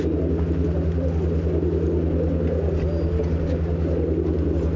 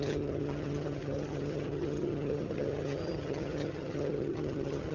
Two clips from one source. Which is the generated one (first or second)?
second